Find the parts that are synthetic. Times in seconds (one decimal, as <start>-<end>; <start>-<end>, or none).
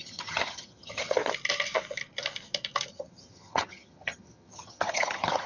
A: 0.0-1.2; 2.9-5.5